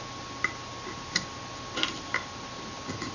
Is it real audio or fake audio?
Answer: real